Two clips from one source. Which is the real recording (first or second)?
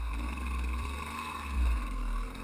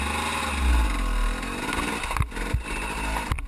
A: second